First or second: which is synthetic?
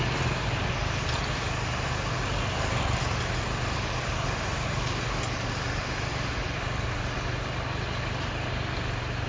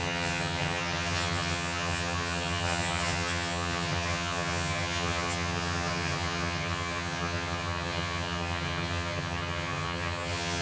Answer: second